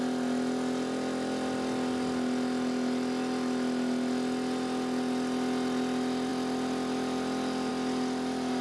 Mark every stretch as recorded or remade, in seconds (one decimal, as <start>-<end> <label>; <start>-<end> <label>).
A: 0.0-8.6 recorded